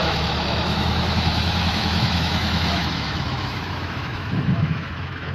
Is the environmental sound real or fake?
fake